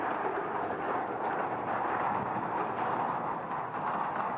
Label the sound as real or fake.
real